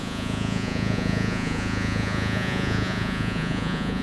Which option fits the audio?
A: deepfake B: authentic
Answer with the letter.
A